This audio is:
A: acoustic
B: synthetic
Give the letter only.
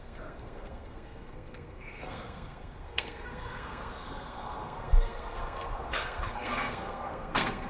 B